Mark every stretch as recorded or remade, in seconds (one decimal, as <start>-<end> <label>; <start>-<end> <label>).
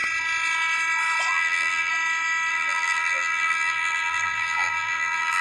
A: 0.0-1.3 recorded; 1.3-1.9 remade; 1.9-2.5 recorded; 2.5-5.4 remade